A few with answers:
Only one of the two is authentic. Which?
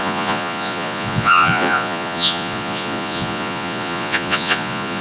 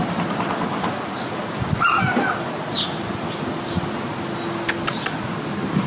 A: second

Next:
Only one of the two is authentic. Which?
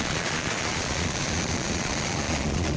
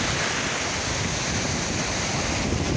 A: second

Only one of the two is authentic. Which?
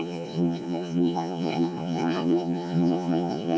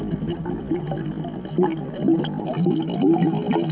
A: second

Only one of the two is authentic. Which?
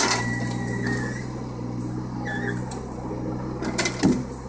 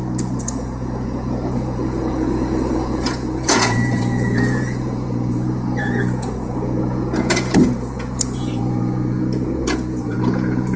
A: first